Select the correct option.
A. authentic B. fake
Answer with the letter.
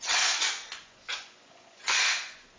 B